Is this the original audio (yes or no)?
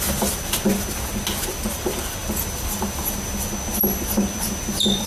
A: yes